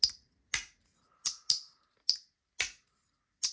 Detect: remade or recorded recorded